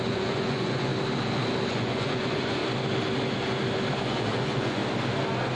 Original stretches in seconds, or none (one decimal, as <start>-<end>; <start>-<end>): 0.9-1.7; 2.6-4.0; 4.8-5.6